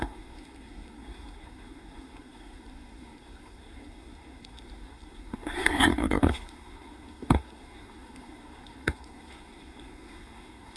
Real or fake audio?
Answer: fake